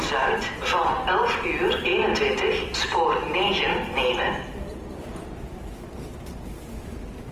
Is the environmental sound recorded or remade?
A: recorded